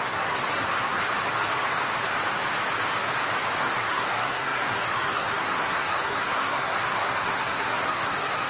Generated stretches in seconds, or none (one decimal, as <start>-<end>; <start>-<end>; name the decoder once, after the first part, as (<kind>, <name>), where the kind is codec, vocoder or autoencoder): 0.0-1.0 (codec, SNAC); 3.6-8.5